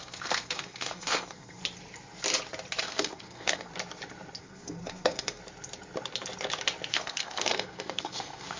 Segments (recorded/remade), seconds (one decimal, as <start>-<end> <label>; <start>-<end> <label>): 0.0-1.6 remade; 1.6-2.8 recorded; 2.8-3.7 remade; 3.7-4.4 recorded; 4.4-5.4 remade; 5.4-6.9 recorded; 6.9-8.6 remade

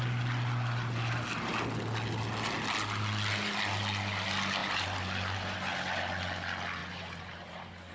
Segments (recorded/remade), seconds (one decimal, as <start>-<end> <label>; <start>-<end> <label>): 0.0-4.6 recorded; 4.6-5.7 remade; 5.7-6.8 recorded; 6.8-7.9 remade